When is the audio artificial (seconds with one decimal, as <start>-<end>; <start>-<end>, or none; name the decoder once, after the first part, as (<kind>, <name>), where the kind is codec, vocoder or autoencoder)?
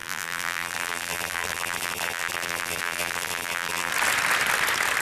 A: 0.0-3.9 (vocoder, BigVGAN v2)